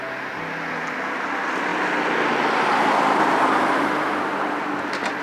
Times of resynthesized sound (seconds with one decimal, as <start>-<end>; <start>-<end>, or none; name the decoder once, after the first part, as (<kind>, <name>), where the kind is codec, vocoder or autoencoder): none

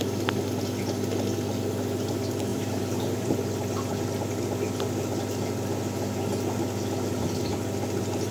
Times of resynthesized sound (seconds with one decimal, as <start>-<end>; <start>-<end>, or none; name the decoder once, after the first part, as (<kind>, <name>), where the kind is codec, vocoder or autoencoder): 2.5-3.3 (vocoder, BigVGAN v2)

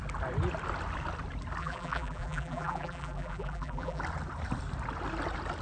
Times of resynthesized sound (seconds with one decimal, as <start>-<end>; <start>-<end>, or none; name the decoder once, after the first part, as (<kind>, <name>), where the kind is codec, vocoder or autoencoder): 1.6-4.0 (vocoder, BigVGAN v2)

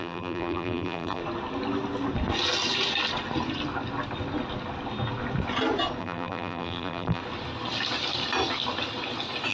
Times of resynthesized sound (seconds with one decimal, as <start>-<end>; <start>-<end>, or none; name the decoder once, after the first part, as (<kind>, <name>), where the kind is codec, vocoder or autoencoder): 0.0-1.2 (vocoder, BigVGAN v2); 6.0-7.2